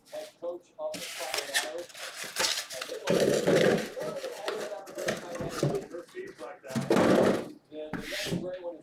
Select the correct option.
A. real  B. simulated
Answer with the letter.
A